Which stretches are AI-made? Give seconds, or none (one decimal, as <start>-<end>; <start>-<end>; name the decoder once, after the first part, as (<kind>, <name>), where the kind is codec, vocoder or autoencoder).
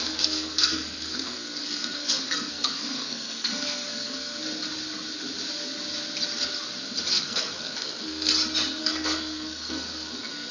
0.0-4.4 (codec, SNAC); 7.1-8.3; 8.8-10.5